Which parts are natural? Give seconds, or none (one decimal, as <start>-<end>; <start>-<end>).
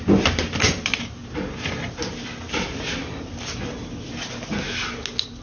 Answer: 0.0-5.4